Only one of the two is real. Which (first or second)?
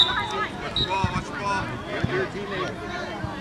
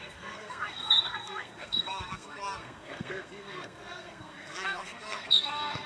first